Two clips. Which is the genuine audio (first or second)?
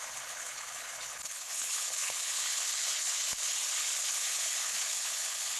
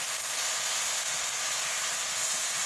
second